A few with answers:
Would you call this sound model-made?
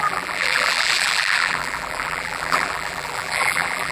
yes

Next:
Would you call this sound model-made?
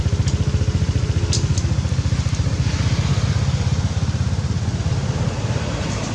no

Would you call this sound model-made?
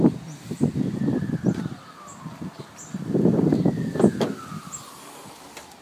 no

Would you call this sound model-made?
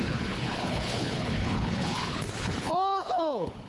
yes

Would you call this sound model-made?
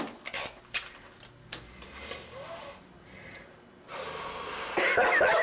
no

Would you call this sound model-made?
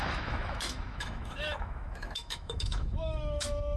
yes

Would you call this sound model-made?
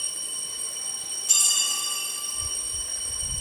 no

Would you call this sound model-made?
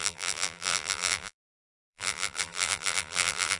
yes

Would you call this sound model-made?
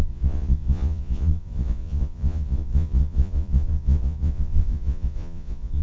yes